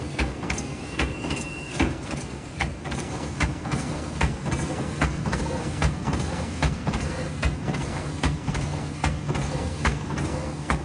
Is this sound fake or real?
fake